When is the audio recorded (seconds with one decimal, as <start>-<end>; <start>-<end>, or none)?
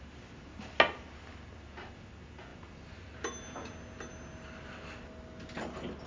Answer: 0.0-6.1